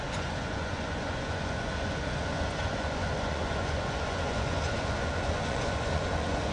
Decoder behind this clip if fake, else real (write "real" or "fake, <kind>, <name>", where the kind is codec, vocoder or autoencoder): fake, vocoder, Vocos